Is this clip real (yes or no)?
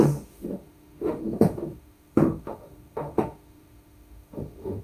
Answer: no